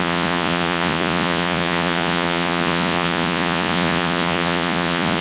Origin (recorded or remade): remade